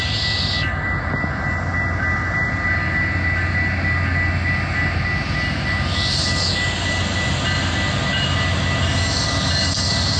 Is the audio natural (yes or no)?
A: yes